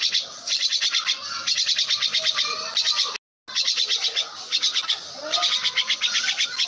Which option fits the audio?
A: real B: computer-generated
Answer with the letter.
A